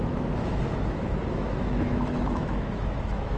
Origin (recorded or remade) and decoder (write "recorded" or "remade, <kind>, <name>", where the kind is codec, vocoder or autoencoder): remade, autoencoder, DAC-VAE